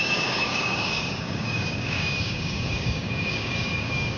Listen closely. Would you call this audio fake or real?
fake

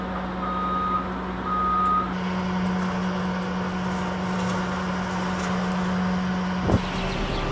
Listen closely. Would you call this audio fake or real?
real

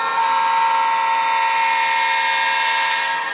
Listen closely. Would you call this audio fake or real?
real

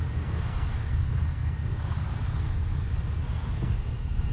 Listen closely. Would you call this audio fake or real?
fake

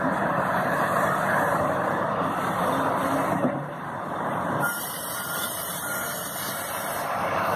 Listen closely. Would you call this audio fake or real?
fake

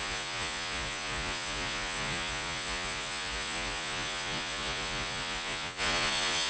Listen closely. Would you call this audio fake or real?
fake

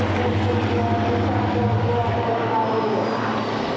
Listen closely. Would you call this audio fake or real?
real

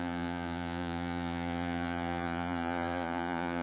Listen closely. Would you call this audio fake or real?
fake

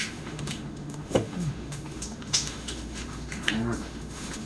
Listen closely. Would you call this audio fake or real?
fake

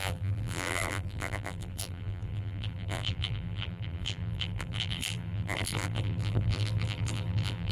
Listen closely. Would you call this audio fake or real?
fake